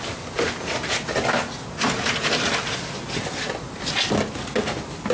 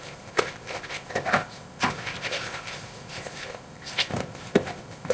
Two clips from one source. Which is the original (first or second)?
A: first